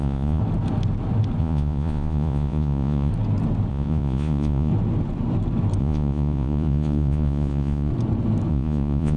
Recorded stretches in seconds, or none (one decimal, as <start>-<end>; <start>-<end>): 0.4-1.4; 3.1-3.7; 4.7-5.8; 7.9-8.5